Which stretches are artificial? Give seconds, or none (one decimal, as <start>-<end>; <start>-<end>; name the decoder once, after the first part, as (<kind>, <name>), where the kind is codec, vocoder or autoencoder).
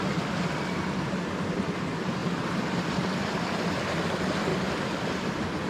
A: 2.2-2.9 (vocoder, BigVGAN v2); 4.5-5.3